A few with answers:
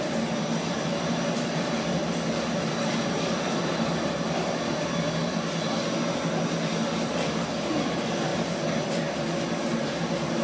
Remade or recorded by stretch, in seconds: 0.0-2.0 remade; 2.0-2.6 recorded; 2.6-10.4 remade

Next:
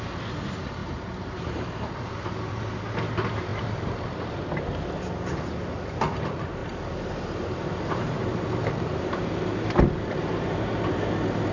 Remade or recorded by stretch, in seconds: 0.0-0.8 recorded; 0.8-1.9 remade; 1.9-3.5 recorded; 3.5-4.1 remade; 4.1-6.6 recorded; 6.6-10.8 remade; 10.8-11.5 recorded

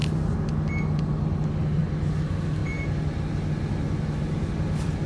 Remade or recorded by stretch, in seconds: 0.0-5.1 recorded

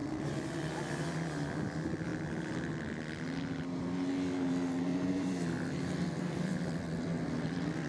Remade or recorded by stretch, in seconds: 0.0-0.7 remade; 0.7-4.9 recorded; 4.9-7.9 remade

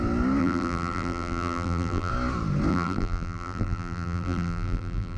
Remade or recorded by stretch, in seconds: 0.0-0.4 recorded; 0.4-2.1 remade; 2.1-2.7 recorded; 2.7-5.2 remade

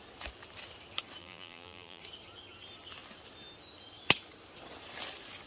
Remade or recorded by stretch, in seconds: 0.0-1.2 recorded; 1.2-2.0 remade; 2.0-5.5 recorded